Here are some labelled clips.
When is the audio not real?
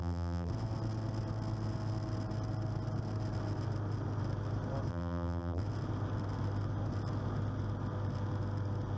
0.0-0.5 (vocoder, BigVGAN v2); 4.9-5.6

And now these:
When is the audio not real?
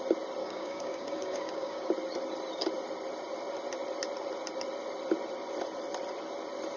0.4-1.9 (codec, DAC)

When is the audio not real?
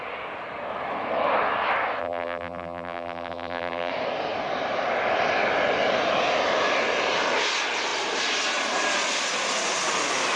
2.0-3.9 (vocoder, BigVGAN v2)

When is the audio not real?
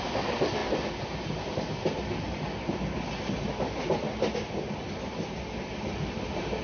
none